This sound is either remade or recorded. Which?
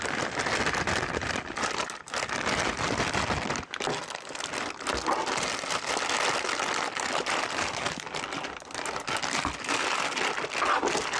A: recorded